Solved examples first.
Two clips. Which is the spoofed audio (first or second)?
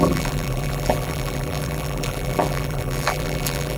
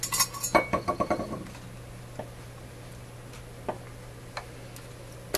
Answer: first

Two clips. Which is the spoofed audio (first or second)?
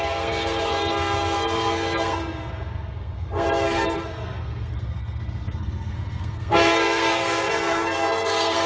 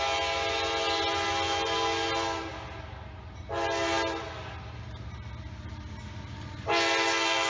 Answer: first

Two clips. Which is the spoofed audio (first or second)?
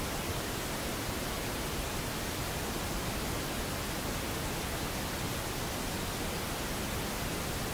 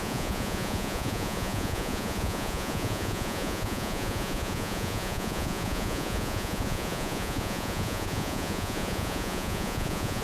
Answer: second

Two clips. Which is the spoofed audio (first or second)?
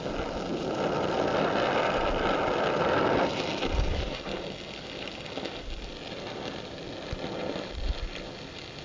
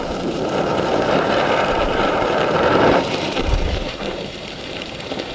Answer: second